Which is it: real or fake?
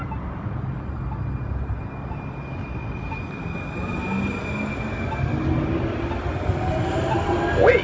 real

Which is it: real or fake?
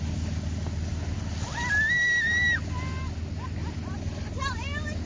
real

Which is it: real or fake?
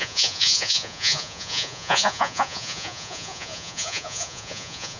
fake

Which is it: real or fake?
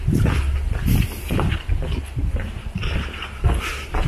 real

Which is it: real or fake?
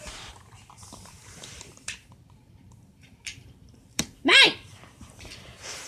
fake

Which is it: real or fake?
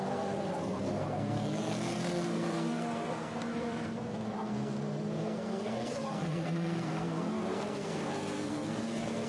fake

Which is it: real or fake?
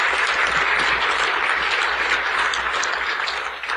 real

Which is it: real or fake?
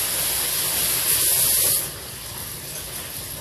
real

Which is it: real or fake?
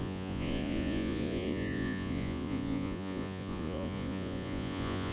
fake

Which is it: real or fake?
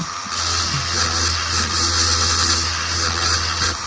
real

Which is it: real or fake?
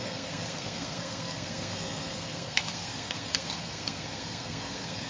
fake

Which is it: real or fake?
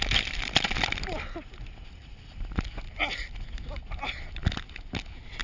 real